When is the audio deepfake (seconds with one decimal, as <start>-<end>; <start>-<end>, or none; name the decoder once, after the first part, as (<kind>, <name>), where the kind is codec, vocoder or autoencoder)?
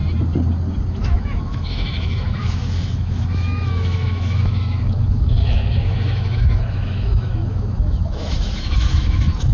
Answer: 0.9-9.5 (autoencoder, DAC-VAE)